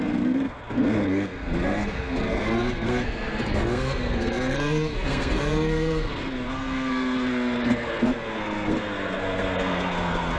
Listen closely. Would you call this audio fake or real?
fake